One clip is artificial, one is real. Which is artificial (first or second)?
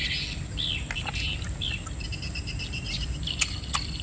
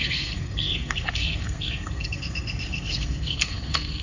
second